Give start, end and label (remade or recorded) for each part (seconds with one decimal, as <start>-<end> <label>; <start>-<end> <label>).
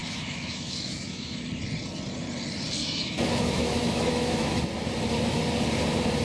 0.0-1.5 remade; 1.5-2.8 recorded; 2.8-4.6 remade; 4.6-6.2 recorded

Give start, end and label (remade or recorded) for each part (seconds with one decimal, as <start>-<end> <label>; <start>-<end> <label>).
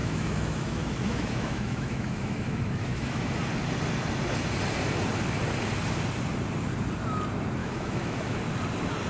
0.0-3.4 remade; 3.4-7.6 recorded; 7.6-8.4 remade; 8.4-9.1 recorded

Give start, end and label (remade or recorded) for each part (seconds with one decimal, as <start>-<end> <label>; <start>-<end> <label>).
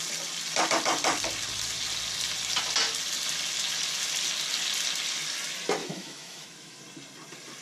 0.0-5.8 recorded; 5.8-6.8 remade; 6.8-7.6 recorded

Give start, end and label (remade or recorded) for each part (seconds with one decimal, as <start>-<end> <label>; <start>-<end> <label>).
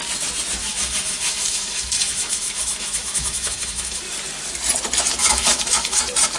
0.0-0.6 recorded; 0.6-4.0 remade; 4.0-5.2 recorded; 5.2-6.0 remade; 6.0-6.4 recorded